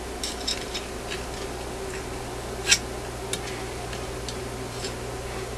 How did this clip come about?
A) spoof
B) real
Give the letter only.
B